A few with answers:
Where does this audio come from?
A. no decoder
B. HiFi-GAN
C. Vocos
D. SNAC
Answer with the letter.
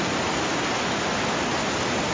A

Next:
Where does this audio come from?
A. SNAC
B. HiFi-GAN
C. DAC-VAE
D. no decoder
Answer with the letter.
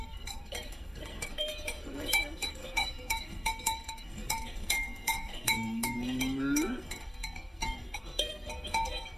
A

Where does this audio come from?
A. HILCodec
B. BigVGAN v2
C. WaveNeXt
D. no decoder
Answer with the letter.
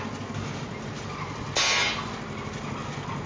D